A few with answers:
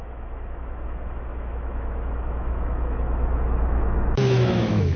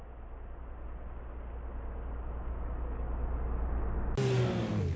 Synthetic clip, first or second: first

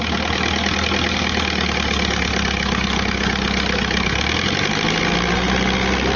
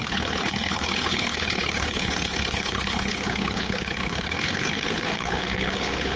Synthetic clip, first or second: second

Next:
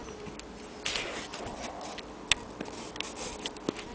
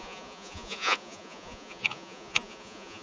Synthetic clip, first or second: second